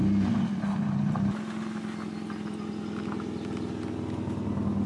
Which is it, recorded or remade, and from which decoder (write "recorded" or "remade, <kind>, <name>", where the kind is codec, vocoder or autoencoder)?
recorded